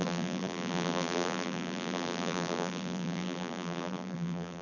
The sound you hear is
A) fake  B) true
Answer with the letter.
A